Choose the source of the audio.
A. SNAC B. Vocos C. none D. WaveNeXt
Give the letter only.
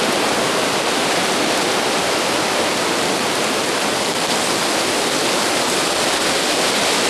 C